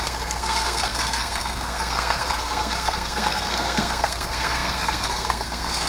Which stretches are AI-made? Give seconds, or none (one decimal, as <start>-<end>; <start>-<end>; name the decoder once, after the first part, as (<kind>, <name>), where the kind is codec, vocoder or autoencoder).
0.0-5.9 (codec, SNAC)